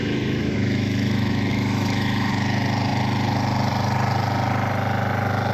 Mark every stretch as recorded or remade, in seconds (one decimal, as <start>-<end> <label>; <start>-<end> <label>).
0.0-2.3 remade; 2.3-5.5 recorded